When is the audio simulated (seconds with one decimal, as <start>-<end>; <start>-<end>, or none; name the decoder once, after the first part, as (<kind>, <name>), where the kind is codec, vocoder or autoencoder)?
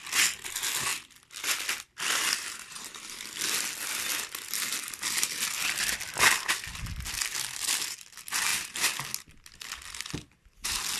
none